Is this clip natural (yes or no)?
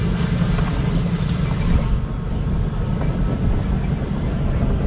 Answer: yes